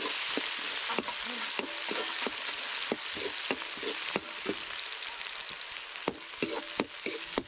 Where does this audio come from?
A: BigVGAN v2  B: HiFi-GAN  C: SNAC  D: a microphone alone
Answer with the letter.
D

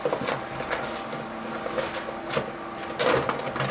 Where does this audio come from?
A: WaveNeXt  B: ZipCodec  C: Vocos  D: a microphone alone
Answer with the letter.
D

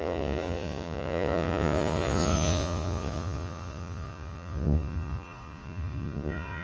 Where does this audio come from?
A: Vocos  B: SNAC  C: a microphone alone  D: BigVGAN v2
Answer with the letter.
A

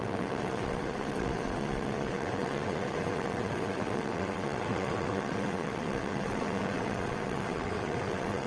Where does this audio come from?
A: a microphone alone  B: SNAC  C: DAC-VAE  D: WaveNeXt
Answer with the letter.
D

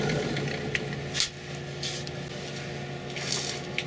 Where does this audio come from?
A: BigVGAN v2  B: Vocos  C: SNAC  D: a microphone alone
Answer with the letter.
D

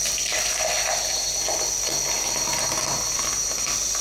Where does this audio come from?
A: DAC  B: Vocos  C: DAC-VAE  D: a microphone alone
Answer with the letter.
D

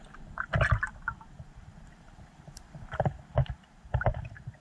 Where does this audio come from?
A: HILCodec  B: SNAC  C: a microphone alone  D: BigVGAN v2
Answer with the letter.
D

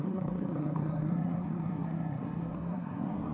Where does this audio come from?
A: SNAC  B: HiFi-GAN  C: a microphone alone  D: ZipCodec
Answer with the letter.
A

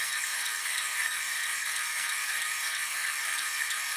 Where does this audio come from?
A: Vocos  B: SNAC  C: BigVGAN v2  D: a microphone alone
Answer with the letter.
B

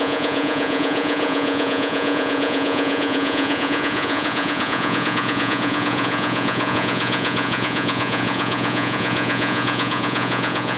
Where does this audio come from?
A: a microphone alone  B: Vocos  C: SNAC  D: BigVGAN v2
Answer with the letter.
B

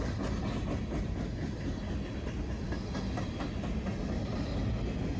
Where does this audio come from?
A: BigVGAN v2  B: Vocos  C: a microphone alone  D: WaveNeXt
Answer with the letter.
C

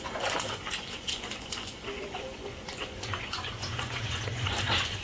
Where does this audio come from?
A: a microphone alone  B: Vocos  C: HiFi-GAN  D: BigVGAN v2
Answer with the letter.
B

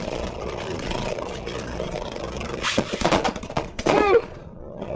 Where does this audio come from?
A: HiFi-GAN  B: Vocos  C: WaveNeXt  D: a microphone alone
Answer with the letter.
B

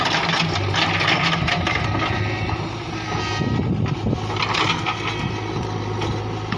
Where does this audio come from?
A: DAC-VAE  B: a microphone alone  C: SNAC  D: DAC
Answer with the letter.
B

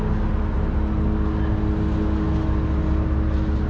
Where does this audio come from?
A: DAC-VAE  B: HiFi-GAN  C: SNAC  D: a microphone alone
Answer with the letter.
D